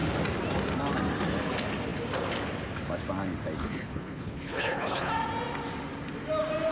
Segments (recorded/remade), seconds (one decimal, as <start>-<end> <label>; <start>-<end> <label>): 0.0-3.6 recorded; 3.6-5.1 remade; 5.1-6.7 recorded